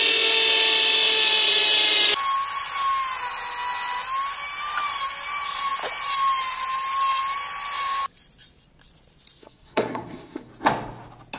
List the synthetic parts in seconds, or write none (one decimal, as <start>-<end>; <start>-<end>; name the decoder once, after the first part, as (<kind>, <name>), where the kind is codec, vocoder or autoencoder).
9.4-10.5 (codec, SNAC)